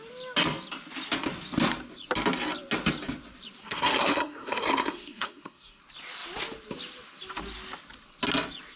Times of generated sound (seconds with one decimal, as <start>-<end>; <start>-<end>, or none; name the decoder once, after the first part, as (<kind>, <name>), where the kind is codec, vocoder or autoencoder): 3.6-5.8 (codec, SNAC)